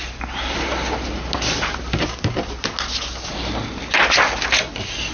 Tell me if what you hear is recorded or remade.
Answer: recorded